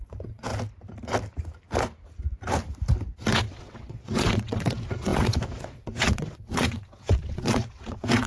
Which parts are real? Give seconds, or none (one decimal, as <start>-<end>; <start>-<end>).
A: 0.5-3.3

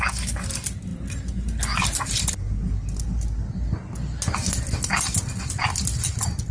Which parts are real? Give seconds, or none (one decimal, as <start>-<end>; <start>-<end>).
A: 0.0-6.5

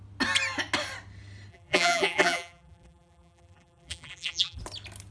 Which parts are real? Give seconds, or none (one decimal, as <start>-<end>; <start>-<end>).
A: 0.0-1.5; 4.6-5.1

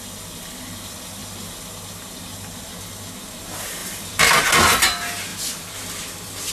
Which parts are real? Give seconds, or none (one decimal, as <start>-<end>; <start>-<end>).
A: 0.0-3.8; 4.5-5.3

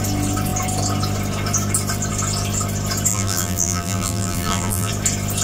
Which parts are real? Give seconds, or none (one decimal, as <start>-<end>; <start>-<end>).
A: 0.0-3.1; 4.9-5.4

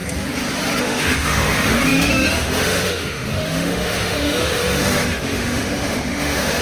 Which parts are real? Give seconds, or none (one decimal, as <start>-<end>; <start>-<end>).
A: 0.0-0.8

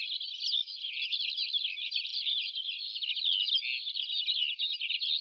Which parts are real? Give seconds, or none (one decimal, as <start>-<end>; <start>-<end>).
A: 0.0-5.2

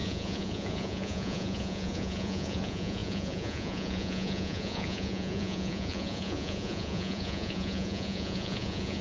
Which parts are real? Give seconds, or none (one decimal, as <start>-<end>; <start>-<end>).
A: none